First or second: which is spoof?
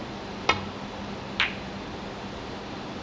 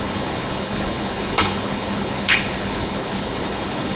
second